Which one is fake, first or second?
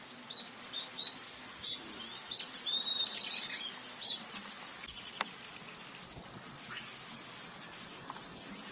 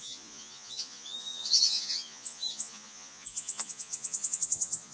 second